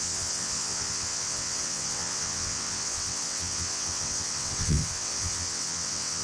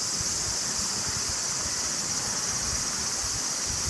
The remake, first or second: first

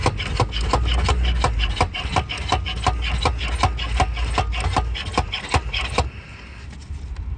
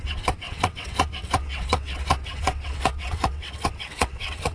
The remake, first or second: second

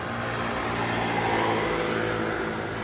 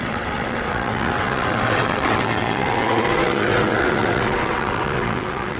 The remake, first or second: second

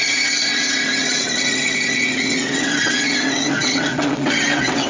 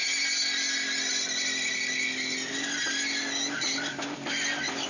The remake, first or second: first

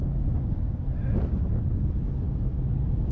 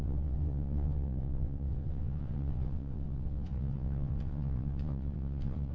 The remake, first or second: second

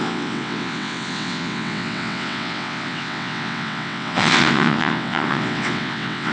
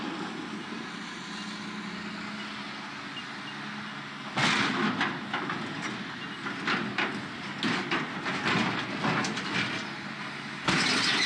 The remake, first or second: first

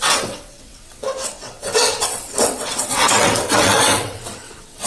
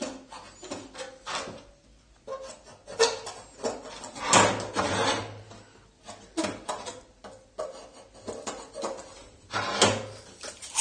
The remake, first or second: first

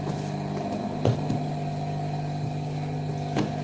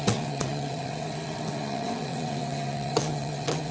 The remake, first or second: second